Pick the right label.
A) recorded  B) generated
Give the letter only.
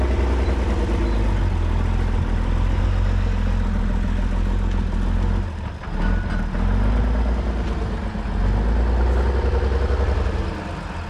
A